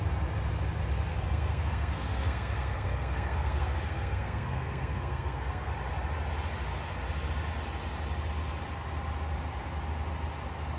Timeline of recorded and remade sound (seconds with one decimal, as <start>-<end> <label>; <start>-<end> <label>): 0.0-1.1 recorded; 1.1-5.7 remade; 5.7-10.8 recorded